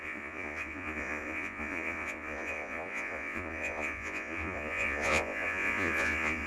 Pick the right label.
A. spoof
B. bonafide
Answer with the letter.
A